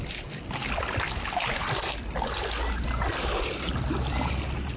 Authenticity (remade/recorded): recorded